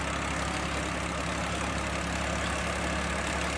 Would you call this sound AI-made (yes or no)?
no